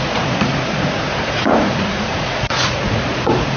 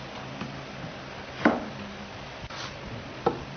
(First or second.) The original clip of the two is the second